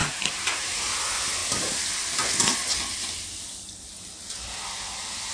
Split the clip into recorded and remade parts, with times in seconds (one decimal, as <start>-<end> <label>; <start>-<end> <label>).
0.0-0.8 remade; 0.8-5.3 recorded